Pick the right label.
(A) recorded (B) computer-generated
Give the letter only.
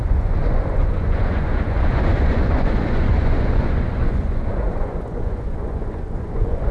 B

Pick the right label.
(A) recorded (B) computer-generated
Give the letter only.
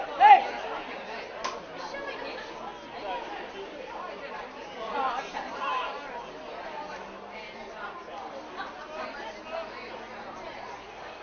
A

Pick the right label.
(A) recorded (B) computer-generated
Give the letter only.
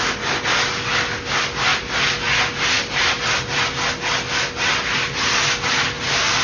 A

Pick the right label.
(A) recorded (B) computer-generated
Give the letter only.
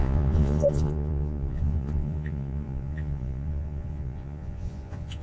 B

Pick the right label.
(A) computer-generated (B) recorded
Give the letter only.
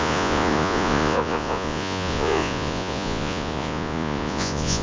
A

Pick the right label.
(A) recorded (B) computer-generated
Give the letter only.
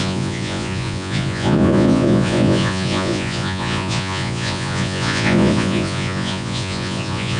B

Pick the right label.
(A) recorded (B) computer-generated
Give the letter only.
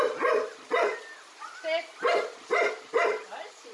A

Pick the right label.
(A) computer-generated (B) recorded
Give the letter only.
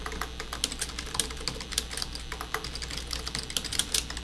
B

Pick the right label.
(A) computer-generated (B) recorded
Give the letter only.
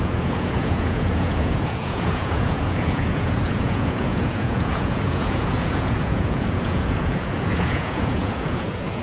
A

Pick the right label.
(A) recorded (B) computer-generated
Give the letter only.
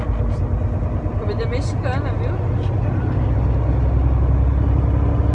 A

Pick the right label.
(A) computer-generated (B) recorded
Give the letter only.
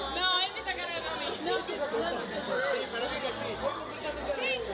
B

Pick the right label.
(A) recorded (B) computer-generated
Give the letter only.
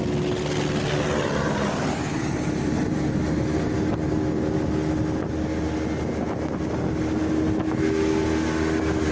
A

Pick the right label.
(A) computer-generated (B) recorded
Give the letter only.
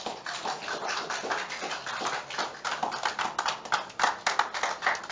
B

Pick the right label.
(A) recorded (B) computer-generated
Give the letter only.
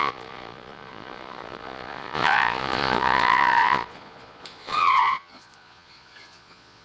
B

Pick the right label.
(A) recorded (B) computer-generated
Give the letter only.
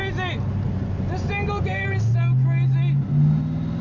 A